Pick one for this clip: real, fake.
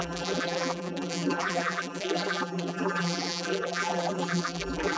fake